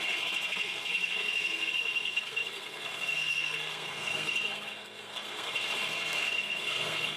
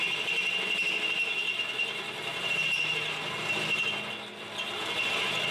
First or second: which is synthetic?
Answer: first